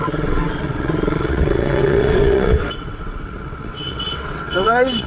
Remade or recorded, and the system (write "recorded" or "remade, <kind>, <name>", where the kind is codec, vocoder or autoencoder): remade, vocoder, WaveNeXt